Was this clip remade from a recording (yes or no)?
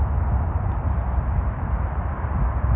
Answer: no